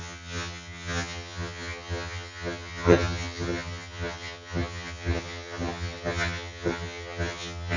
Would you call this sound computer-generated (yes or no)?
yes